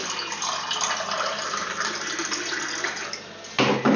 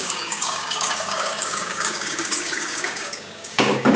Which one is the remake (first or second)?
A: second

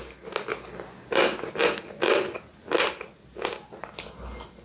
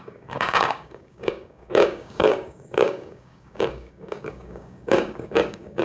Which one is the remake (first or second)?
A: second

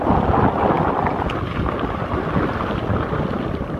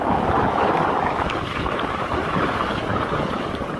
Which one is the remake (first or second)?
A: second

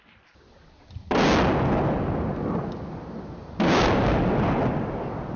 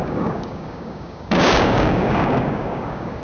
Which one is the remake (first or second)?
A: second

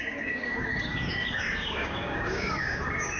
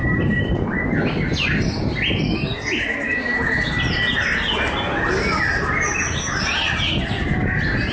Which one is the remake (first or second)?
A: first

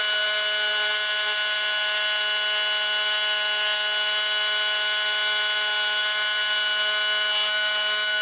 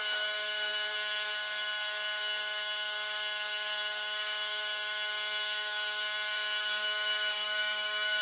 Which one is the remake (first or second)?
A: second